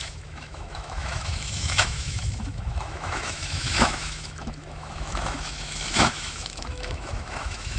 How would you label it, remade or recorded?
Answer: remade